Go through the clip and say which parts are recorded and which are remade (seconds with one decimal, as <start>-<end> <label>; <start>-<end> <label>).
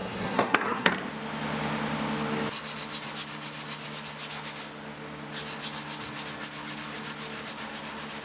0.0-0.9 remade; 0.9-8.2 recorded